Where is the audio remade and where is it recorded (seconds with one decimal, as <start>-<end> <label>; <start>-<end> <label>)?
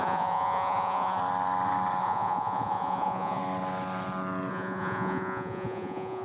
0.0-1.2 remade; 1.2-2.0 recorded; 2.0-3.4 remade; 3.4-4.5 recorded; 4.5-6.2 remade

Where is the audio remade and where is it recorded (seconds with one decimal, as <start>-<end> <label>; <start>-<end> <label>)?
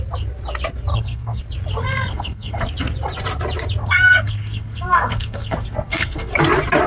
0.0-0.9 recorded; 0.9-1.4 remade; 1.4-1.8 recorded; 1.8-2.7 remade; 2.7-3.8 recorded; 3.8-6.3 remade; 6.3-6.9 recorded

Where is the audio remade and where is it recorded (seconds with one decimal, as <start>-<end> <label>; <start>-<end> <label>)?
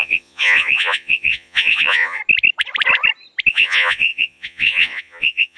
0.0-2.2 remade; 2.2-3.5 recorded; 3.5-5.6 remade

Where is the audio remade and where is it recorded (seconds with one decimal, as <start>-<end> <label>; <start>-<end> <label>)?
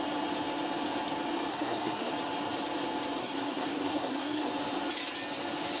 0.0-1.5 recorded; 1.5-2.1 remade; 2.1-3.2 recorded; 3.2-4.5 remade; 4.5-5.8 recorded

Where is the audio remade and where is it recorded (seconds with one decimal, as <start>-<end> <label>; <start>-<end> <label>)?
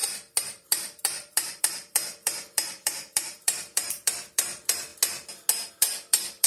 0.0-4.9 remade; 4.9-5.7 recorded; 5.7-6.5 remade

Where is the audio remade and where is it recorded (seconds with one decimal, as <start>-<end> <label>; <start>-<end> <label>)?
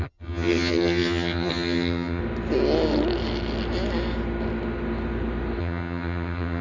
0.0-2.2 remade; 2.2-5.6 recorded; 5.6-6.6 remade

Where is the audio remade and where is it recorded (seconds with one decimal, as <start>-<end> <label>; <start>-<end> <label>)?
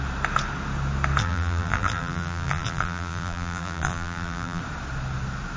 0.0-1.2 recorded; 1.2-4.6 remade; 4.6-5.6 recorded